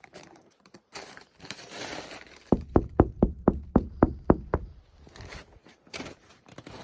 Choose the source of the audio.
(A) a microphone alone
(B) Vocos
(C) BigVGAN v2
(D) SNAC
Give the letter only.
C